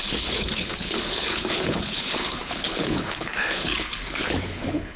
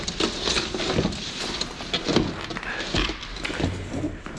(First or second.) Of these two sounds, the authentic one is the second